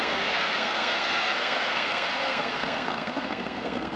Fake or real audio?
fake